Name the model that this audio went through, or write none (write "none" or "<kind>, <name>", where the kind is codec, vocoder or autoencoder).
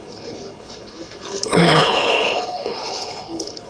codec, HILCodec